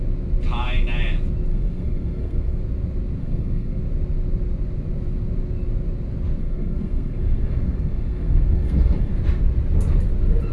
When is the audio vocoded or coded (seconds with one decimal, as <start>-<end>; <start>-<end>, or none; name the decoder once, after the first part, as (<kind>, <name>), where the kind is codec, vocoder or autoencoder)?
1.5-2.6 (codec, SNAC); 3.2-3.8; 6.4-9.1